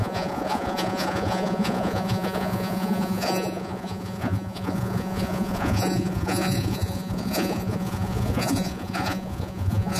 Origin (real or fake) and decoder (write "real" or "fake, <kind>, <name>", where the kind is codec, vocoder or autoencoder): fake, vocoder, Vocos